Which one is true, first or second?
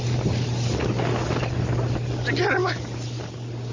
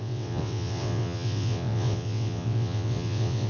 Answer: first